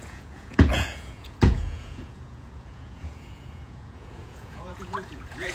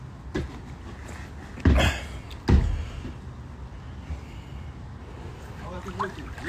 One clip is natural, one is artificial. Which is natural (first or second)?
second